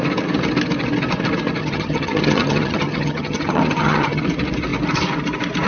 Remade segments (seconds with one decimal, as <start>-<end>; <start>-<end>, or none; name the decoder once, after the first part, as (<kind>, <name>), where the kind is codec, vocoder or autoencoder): 1.6-4.2 (vocoder, HiFi-GAN)